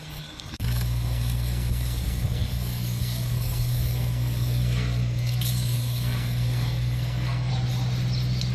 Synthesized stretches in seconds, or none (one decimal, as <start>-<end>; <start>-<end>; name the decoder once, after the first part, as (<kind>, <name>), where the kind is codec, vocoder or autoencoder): 0.0-7.5 (codec, SNAC)